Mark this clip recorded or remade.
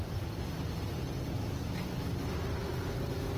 recorded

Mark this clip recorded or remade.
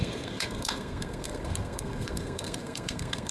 remade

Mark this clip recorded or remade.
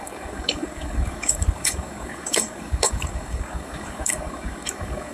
remade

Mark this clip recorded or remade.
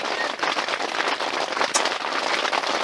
recorded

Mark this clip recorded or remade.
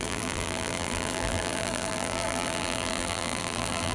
remade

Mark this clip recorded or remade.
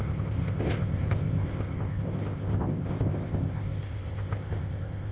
remade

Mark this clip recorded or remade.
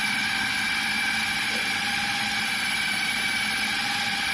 remade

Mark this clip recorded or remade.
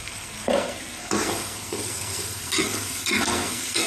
remade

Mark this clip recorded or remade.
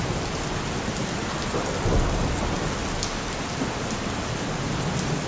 recorded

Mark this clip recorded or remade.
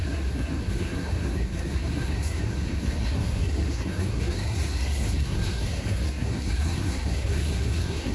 remade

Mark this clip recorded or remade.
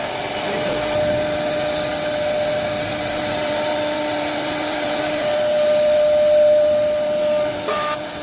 recorded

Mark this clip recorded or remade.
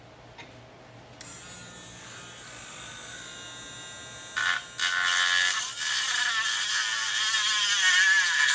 recorded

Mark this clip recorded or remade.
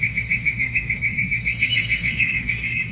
remade